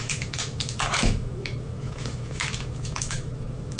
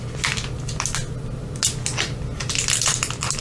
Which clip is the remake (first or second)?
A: first